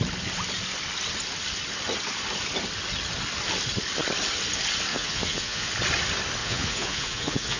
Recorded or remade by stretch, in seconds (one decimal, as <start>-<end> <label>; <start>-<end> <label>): 0.0-4.9 recorded; 4.9-5.7 remade; 5.7-6.4 recorded; 6.4-7.6 remade